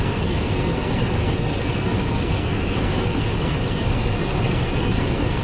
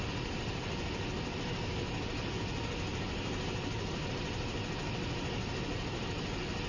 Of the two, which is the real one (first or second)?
second